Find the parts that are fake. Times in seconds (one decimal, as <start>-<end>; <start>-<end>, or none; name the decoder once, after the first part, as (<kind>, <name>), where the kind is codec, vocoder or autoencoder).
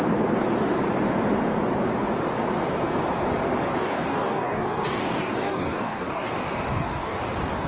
3.7-6.3 (codec, DAC); 6.7-7.2